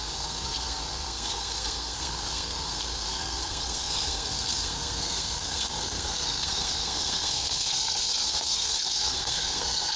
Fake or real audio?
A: fake